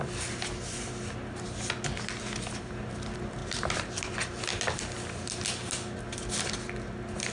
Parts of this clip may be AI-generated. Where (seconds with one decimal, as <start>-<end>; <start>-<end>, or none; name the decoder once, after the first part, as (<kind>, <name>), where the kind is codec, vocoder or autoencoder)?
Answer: 3.4-4.1 (vocoder, BigVGAN v2)